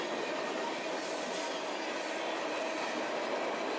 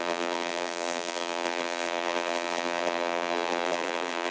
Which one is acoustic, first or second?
first